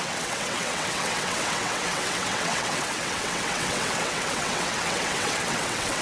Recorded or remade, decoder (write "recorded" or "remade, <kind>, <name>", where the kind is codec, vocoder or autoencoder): remade, vocoder, WaveNeXt